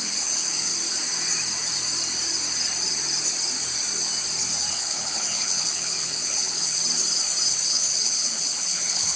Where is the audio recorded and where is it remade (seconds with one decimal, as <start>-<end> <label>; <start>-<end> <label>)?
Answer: 0.0-0.7 remade; 0.7-4.7 recorded; 4.7-6.8 remade; 6.8-7.5 recorded; 7.5-9.2 remade